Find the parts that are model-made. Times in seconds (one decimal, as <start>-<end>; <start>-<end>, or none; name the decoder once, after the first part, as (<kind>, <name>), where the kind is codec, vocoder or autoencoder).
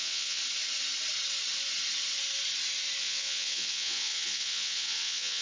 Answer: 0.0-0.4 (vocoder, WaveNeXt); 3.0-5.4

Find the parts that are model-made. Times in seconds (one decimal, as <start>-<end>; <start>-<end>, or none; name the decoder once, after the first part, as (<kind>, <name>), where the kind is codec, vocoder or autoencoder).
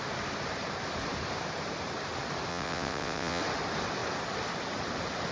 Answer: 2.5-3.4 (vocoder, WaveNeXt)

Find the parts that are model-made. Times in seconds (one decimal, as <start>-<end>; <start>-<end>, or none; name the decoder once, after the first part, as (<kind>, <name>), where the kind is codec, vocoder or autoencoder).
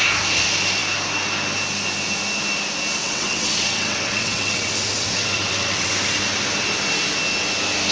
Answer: 3.0-5.9 (vocoder, WaveNeXt)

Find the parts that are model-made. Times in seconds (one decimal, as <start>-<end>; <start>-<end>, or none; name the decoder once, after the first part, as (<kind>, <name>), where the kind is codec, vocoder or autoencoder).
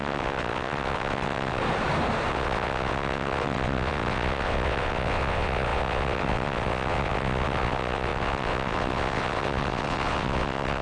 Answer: 0.0-1.6 (vocoder, WaveNeXt); 2.3-10.8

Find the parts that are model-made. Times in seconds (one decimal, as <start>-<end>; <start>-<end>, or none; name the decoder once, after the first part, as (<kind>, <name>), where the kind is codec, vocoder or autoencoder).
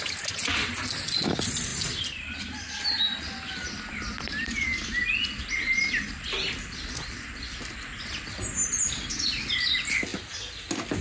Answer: none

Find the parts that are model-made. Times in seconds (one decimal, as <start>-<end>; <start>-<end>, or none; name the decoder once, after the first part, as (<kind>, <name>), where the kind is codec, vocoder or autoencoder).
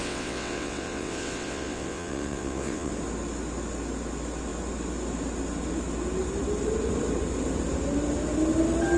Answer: 0.0-2.9 (vocoder, WaveNeXt)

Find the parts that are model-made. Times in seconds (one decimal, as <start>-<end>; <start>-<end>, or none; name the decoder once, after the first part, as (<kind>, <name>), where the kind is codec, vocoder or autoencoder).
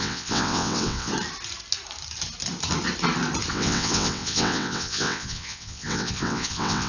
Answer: 0.0-1.1 (vocoder, WaveNeXt); 3.5-6.9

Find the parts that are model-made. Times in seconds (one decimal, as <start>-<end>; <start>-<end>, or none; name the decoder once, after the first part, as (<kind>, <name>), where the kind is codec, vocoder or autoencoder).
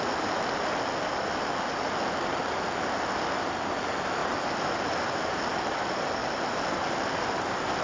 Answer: none